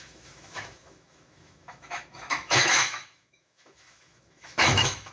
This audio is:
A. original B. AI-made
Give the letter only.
B